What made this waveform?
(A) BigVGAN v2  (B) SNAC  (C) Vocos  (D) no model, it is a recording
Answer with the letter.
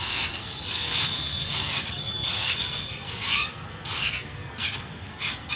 B